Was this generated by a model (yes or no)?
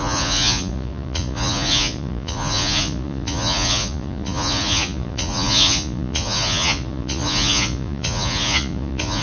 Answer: yes